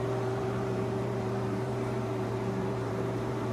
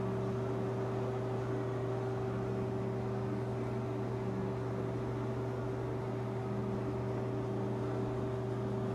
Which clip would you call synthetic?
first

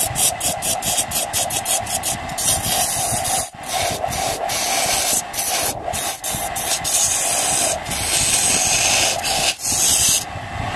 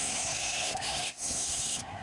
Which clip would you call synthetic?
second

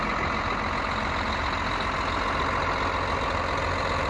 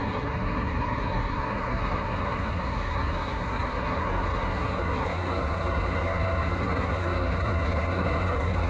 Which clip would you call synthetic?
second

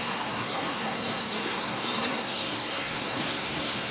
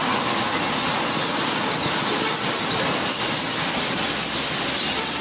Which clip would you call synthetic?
first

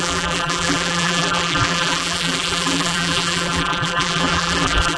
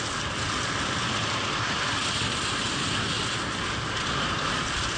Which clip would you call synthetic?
first